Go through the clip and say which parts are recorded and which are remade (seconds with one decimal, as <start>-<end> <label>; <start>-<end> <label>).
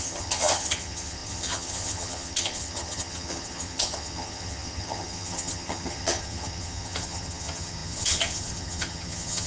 0.0-9.5 remade